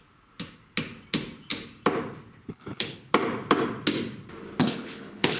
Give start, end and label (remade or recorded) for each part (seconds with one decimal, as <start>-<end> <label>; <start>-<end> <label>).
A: 0.0-2.5 recorded; 2.5-3.1 remade; 3.1-4.6 recorded; 4.6-5.4 remade

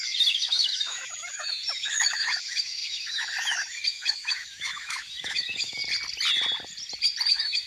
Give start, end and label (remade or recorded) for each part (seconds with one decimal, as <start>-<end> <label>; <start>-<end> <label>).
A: 0.0-5.8 remade; 5.8-7.3 recorded; 7.3-7.7 remade

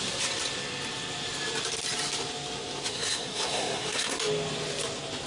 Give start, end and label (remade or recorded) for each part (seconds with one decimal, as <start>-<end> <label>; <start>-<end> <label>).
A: 0.0-2.9 recorded; 2.9-4.2 remade; 4.2-5.3 recorded

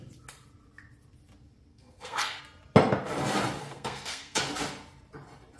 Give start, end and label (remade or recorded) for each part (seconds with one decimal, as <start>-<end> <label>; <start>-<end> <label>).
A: 0.0-1.7 recorded; 1.7-2.4 remade; 2.4-3.6 recorded; 3.6-4.4 remade; 4.4-5.6 recorded

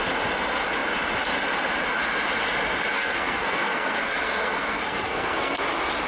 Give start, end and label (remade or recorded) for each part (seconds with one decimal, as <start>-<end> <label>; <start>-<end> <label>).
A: 0.0-2.9 recorded; 2.9-5.6 remade; 5.6-6.1 recorded

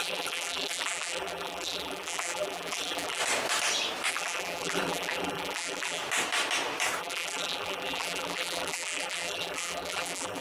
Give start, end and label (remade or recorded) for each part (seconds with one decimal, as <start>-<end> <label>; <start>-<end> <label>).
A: 0.0-3.2 remade; 3.2-4.1 recorded; 4.1-6.0 remade; 6.0-7.0 recorded; 7.0-10.4 remade

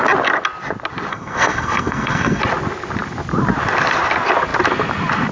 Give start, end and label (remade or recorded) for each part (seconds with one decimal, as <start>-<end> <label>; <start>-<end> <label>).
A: 0.0-1.1 recorded; 1.1-2.4 remade; 2.4-5.3 recorded

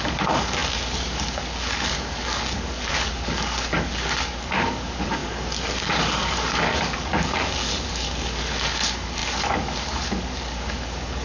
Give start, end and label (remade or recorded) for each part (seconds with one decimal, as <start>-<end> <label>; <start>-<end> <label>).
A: 0.0-11.2 remade